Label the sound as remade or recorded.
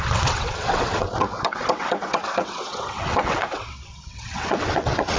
remade